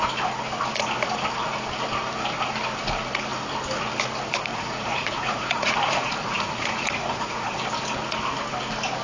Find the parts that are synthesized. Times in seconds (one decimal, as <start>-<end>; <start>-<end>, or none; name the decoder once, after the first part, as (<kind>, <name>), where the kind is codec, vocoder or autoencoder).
4.5-7.6 (vocoder, Vocos)